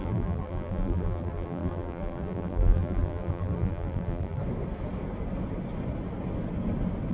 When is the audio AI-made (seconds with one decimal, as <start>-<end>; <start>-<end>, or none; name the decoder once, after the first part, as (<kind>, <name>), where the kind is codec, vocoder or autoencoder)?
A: 0.0-4.4 (vocoder, BigVGAN v2)

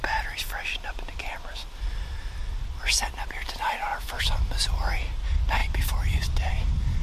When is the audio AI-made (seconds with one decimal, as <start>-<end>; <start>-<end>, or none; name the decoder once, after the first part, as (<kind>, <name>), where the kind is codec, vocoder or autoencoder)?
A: 5.6-6.5 (vocoder, BigVGAN v2)

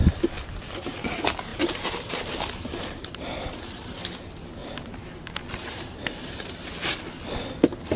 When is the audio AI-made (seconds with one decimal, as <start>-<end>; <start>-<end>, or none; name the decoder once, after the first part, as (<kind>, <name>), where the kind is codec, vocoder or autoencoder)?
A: 1.5-4.0 (vocoder, BigVGAN v2); 4.6-6.5

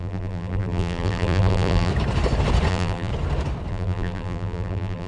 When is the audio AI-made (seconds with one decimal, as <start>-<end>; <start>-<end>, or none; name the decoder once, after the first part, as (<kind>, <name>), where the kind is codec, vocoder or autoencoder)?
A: 0.0-1.9 (vocoder, BigVGAN v2); 2.7-3.1; 3.7-5.1

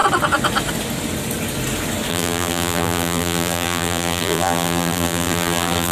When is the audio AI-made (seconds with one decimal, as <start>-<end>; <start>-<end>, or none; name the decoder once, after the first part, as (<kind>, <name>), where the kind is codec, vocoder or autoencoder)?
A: 2.1-5.9 (vocoder, BigVGAN v2)

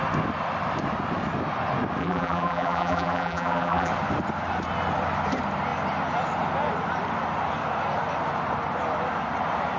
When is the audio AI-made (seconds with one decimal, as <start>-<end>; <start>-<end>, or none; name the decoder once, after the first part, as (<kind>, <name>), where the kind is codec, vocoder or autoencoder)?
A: 2.0-3.9 (vocoder, BigVGAN v2)